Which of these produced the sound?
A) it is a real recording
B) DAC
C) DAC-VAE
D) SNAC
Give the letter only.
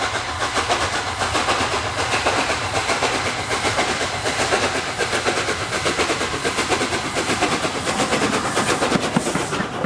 A